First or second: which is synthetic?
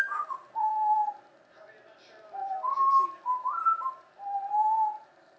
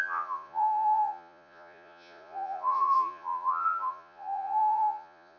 second